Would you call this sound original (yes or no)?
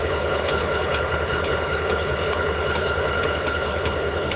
no